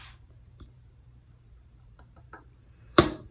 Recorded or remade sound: remade